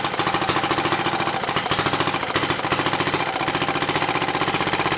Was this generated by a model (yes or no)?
yes